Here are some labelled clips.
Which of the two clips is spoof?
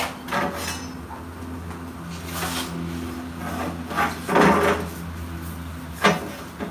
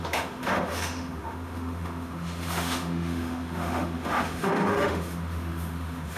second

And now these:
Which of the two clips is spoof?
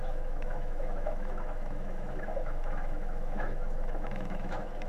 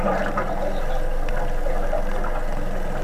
first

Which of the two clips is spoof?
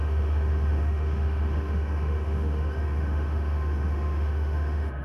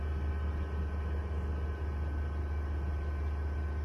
first